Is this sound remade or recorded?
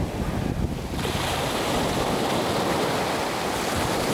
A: recorded